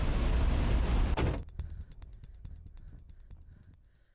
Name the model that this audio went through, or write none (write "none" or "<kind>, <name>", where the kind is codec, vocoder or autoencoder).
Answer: none